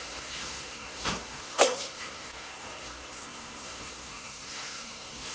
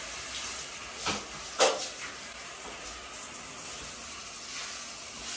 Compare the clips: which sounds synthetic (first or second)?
first